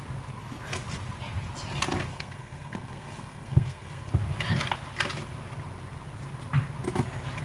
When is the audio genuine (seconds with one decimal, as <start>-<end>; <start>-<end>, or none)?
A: 0.0-2.1; 4.1-7.4